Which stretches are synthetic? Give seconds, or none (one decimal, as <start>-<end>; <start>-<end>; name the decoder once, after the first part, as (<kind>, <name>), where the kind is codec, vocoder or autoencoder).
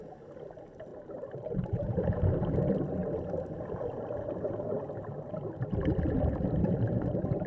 0.9-2.6 (vocoder, BigVGAN v2); 6.6-7.5